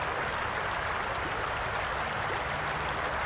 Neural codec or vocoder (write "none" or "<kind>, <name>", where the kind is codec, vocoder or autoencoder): none